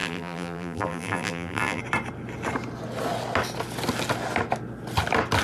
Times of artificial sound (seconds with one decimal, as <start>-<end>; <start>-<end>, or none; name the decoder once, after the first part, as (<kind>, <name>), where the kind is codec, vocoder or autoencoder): 0.0-1.8 (vocoder, BigVGAN v2)